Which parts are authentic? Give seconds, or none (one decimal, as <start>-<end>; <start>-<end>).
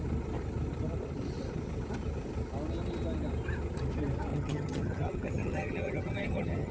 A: 0.0-4.3